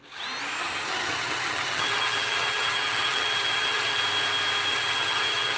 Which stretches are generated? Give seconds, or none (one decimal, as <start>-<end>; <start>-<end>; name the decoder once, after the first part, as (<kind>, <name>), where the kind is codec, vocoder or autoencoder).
0.6-4.0 (vocoder, HiFi-GAN); 4.7-5.6